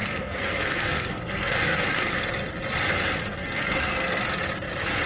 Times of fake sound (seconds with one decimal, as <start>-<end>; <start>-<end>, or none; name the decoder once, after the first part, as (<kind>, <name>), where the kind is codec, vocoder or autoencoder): 0.0-2.1 (codec, SNAC); 3.3-4.2